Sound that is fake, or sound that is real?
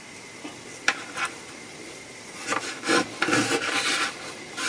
fake